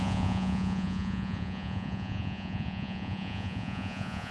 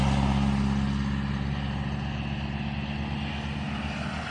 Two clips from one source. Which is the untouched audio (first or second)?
second